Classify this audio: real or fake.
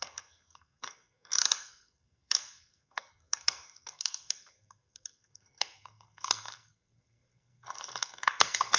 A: fake